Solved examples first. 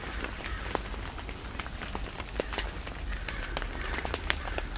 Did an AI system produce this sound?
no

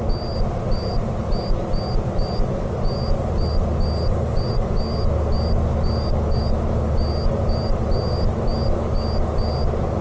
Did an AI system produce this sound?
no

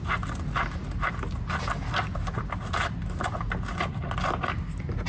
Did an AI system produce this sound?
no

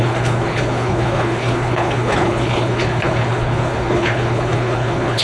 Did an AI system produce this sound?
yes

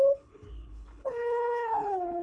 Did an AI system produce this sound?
yes